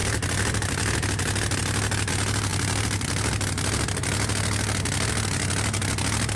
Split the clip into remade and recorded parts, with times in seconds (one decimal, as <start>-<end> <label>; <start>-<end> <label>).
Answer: 0.0-6.4 recorded